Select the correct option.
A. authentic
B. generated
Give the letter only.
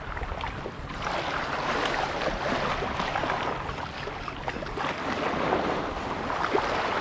A